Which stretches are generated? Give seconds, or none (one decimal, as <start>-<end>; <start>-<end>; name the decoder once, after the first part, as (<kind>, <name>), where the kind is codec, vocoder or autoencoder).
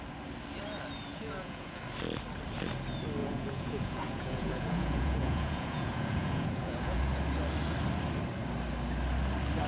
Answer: 1.1-1.8 (vocoder, Vocos); 3.2-7.0